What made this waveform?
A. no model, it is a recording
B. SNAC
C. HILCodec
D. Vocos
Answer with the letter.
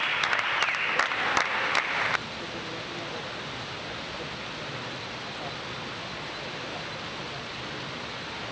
A